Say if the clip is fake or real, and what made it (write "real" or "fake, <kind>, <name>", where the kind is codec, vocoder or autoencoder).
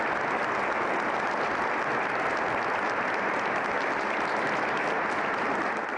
real